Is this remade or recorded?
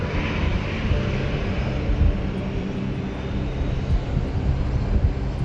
recorded